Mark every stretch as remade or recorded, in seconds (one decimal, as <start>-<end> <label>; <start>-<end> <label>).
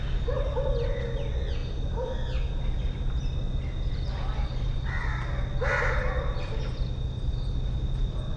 0.0-8.4 recorded